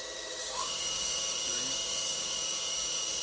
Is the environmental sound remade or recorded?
remade